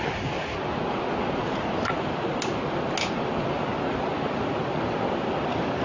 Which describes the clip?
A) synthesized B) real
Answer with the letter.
B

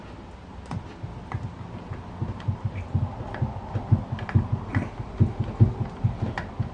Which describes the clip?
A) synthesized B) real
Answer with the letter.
B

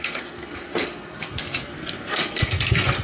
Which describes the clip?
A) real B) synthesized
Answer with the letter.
B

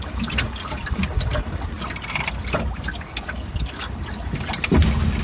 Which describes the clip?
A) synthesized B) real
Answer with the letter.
B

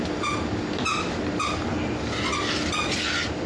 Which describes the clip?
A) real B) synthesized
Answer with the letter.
A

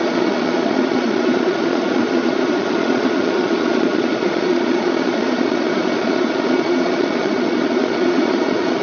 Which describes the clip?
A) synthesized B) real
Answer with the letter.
A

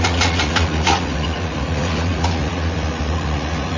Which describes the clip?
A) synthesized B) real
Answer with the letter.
A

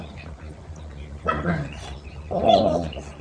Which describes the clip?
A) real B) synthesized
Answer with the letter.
B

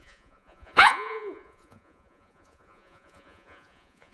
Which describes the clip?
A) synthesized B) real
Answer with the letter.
A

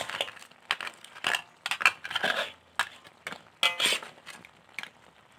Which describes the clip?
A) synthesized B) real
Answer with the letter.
B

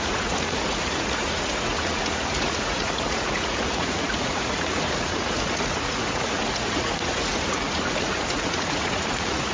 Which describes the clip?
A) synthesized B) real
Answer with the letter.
A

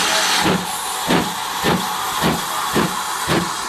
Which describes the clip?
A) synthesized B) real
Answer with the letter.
B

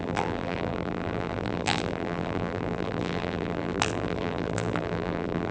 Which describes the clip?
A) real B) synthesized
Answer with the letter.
B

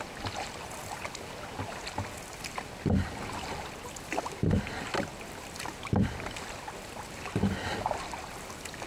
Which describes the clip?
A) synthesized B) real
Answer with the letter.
B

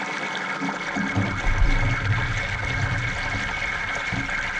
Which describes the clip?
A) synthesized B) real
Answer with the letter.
B